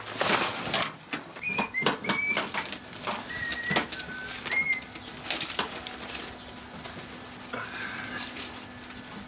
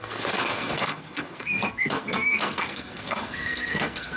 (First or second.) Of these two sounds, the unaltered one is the first